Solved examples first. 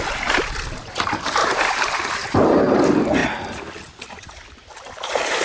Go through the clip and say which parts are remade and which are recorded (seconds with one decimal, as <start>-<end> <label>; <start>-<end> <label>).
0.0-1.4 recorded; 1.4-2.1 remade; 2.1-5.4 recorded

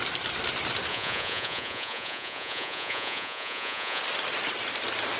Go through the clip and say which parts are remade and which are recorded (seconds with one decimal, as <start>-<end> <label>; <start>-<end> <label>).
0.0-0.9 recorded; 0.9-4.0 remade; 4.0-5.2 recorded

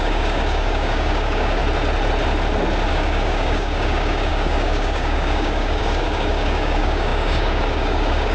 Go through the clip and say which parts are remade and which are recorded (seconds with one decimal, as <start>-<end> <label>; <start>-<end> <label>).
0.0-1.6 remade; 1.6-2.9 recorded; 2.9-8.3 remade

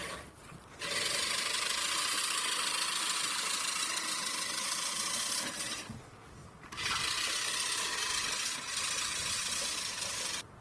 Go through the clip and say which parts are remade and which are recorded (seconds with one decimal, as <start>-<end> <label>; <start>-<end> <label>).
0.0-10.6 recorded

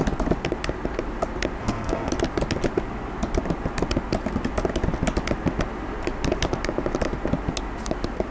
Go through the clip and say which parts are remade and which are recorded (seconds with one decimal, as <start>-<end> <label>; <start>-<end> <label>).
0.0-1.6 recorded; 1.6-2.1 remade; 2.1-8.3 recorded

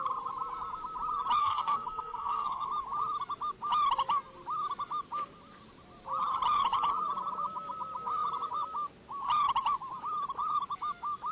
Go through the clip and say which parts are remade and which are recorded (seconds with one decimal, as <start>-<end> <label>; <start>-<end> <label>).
0.0-1.4 recorded; 1.4-2.7 remade; 2.7-11.3 recorded

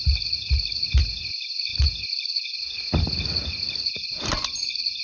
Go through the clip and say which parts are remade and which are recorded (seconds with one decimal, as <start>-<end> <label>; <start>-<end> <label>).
0.0-5.0 recorded

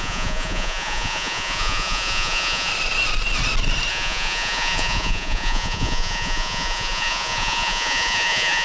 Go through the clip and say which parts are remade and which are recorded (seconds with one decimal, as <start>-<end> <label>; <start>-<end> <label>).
0.0-2.7 remade; 2.7-3.9 recorded; 3.9-8.6 remade